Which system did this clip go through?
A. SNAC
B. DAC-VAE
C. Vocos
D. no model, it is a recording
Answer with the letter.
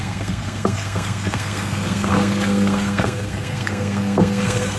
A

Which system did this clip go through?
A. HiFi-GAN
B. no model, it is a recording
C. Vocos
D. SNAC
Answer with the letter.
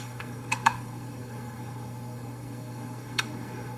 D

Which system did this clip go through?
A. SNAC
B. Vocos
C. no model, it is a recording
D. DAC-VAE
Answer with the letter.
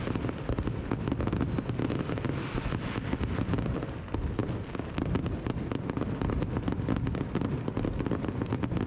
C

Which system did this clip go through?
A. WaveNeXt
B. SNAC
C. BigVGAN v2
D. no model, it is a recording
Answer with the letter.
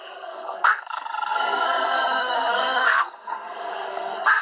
B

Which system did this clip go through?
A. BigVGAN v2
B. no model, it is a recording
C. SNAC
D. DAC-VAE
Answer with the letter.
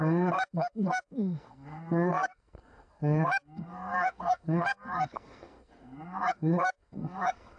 C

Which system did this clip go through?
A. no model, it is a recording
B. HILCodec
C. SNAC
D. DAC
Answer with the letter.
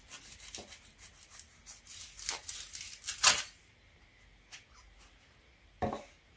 A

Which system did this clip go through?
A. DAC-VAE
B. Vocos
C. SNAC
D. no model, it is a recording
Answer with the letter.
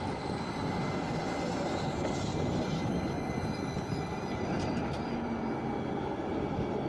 D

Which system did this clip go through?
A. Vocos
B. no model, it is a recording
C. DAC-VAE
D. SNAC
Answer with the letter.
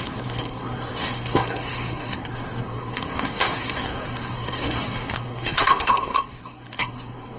D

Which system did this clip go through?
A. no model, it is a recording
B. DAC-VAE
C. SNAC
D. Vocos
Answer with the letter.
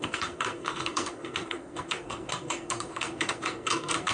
C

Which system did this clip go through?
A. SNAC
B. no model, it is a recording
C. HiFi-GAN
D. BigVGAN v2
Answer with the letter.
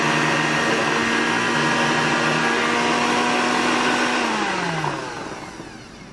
B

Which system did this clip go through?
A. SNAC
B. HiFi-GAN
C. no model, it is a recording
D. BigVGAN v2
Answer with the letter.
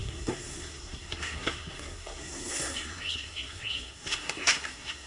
A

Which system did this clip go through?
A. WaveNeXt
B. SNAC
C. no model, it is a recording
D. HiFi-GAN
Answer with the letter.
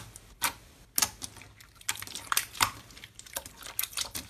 C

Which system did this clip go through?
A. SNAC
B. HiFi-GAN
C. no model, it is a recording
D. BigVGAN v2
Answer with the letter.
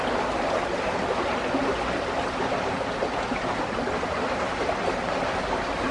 C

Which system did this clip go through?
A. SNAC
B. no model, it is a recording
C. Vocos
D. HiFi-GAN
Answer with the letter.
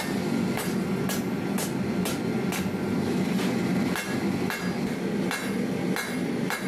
B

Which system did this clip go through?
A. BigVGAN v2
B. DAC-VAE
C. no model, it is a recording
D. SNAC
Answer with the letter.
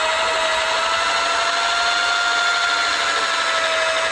C